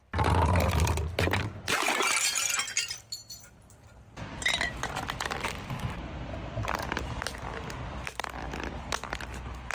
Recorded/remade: recorded